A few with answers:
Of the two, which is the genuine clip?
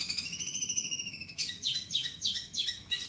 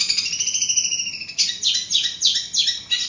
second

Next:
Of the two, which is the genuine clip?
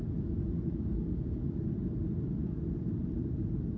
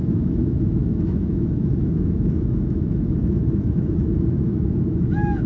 first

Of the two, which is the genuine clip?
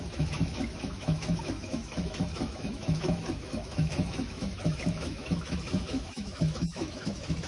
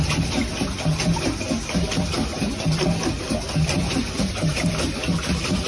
second